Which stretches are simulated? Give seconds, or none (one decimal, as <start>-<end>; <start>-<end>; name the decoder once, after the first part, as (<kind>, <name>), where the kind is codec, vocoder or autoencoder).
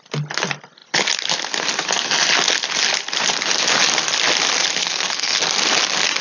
4.8-5.4 (codec, SNAC)